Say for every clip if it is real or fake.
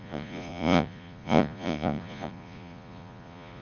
fake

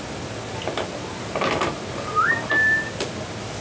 real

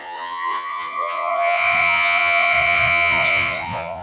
fake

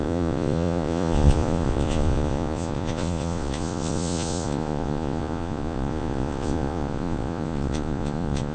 fake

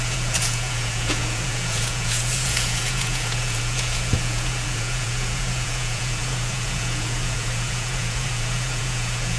fake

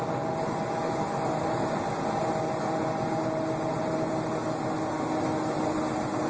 real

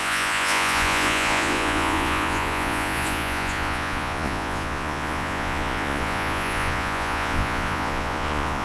fake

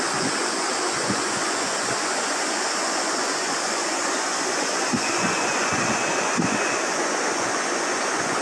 fake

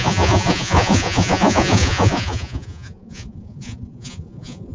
fake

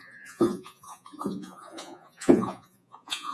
fake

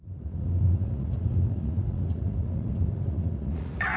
fake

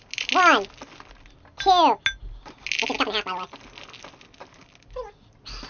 real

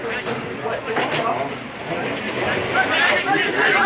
real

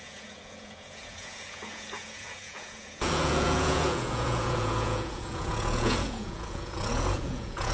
fake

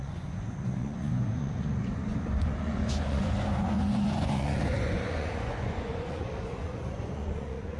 fake